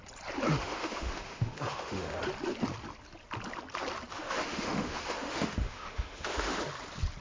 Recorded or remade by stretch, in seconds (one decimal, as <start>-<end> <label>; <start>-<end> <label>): 0.0-0.5 recorded; 0.5-2.2 remade; 2.2-4.1 recorded; 4.1-6.6 remade; 6.6-7.2 recorded